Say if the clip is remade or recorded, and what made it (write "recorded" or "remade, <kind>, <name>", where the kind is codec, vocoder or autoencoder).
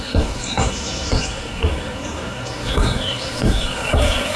remade, codec, SNAC